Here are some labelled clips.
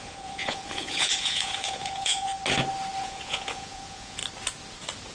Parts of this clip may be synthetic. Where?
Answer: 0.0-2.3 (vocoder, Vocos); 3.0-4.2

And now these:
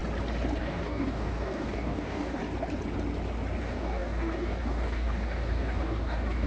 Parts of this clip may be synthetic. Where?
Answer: 0.6-2.4 (codec, DAC); 3.6-6.5

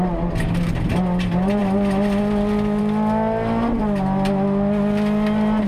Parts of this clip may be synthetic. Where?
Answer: none